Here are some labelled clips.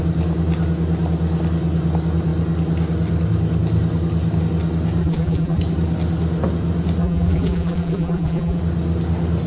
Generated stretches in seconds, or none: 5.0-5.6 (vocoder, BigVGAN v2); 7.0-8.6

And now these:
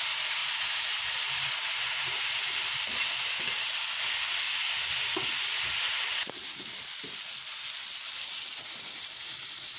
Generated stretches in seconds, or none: none

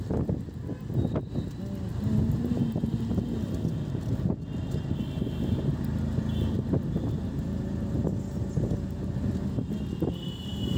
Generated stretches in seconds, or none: 1.9-2.6 (vocoder, BigVGAN v2)

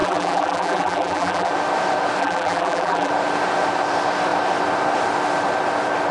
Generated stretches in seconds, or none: 0.0-1.5 (vocoder, BigVGAN v2); 2.2-3.1

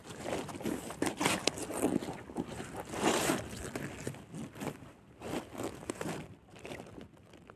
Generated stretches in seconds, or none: 0.0-0.6 (vocoder, BigVGAN v2)